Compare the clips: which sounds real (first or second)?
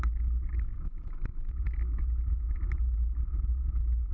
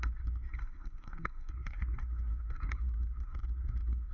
first